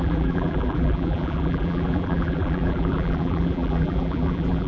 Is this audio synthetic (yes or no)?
yes